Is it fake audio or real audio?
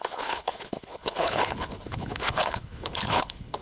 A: fake